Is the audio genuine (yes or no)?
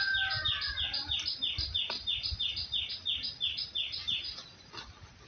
yes